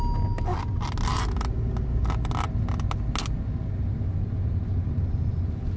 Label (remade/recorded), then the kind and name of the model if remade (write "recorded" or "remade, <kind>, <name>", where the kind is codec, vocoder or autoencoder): recorded